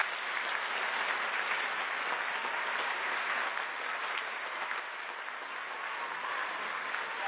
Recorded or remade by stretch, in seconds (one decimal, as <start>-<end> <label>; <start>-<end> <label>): 0.0-7.3 recorded